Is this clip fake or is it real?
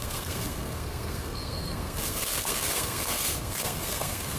fake